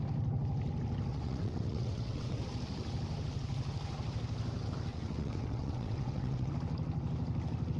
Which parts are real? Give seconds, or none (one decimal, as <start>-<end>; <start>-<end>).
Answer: 0.0-1.1; 2.4-4.9; 6.5-7.8